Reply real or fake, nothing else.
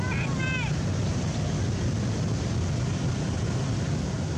real